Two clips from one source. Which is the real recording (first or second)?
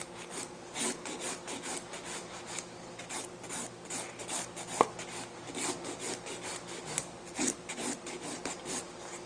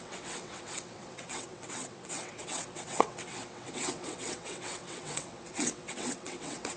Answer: first